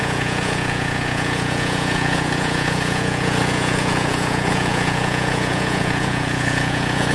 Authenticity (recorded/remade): remade